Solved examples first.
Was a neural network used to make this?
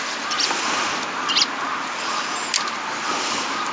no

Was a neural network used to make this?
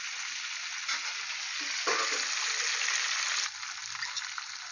no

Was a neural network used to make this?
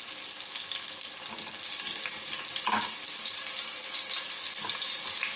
no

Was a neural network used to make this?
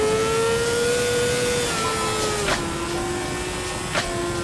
no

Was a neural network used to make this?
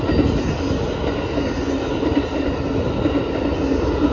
no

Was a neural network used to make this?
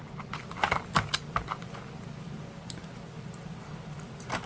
no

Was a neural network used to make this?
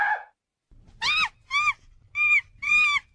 no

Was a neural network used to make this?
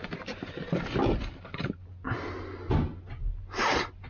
no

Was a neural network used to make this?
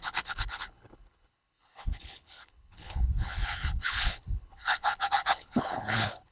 yes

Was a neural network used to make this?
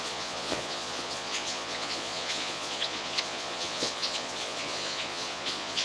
yes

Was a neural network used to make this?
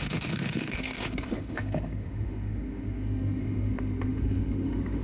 yes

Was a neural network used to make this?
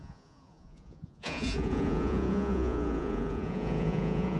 yes